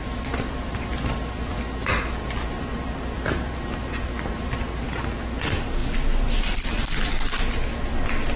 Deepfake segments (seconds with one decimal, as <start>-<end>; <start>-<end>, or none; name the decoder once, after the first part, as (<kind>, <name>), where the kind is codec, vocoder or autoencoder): 0.0-1.6 (vocoder, BigVGAN v2); 2.2-4.5; 5.8-7.4